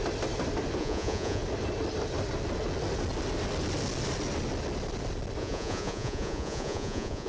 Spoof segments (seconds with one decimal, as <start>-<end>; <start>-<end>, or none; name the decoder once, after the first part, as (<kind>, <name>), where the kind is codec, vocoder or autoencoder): 0.8-1.4 (vocoder, Vocos); 5.4-7.3

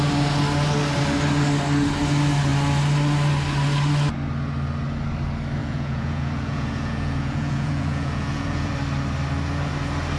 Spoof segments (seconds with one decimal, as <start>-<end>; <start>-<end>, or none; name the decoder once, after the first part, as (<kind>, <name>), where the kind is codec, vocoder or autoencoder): 5.6-8.7 (vocoder, Vocos)

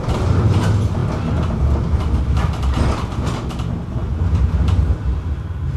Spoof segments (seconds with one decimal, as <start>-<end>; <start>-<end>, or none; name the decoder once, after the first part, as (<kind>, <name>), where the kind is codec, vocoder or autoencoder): none

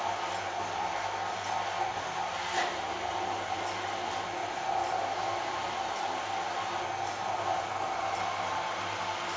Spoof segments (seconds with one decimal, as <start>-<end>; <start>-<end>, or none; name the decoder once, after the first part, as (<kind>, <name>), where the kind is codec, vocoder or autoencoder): 4.4-7.6 (vocoder, BigVGAN v2)

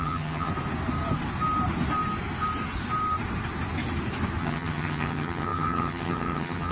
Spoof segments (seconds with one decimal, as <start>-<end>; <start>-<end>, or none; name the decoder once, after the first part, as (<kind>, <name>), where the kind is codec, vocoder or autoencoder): 0.0-0.5 (vocoder, HiFi-GAN); 4.4-6.7

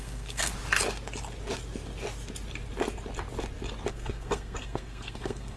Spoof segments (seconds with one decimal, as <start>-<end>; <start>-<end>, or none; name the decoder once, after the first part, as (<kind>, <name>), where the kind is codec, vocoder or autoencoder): 0.0-0.5 (codec, SNAC); 3.9-5.6